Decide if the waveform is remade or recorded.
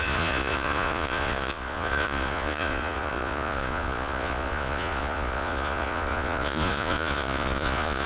remade